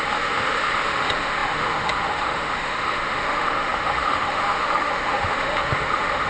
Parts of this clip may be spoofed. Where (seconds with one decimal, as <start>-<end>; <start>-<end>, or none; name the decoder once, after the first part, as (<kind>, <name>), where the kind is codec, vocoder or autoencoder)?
0.0-6.3 (autoencoder, DAC-VAE)